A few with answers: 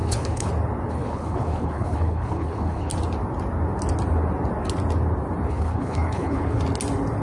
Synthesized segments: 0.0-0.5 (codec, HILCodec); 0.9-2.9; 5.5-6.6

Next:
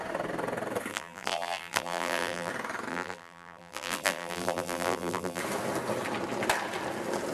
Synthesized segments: 0.9-2.5 (vocoder, BigVGAN v2); 2.9-5.4

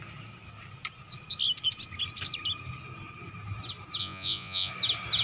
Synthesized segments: 4.0-4.7 (vocoder, Vocos)

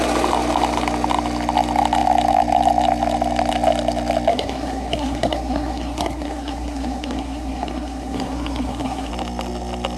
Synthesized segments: 4.3-9.1 (codec, SNAC)

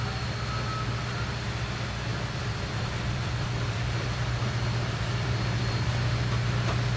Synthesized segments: 2.1-5.9 (vocoder, BigVGAN v2)

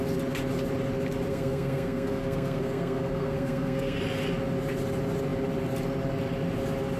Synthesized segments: 1.3-4.0 (codec, SNAC)

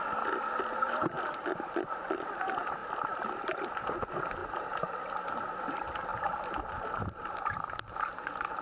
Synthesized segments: 0.0-6.1 (vocoder, BigVGAN v2); 7.5-8.6

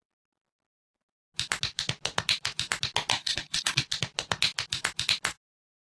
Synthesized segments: 3.1-3.8 (codec, SNAC)